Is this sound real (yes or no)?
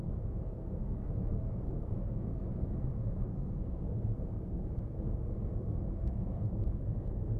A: no